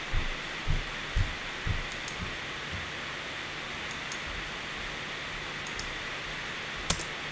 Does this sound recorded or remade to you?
recorded